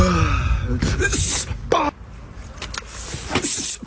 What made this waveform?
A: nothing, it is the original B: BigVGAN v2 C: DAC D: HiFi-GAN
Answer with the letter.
A